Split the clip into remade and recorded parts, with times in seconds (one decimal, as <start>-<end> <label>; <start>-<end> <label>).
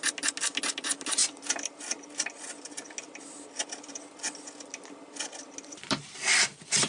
0.0-6.9 recorded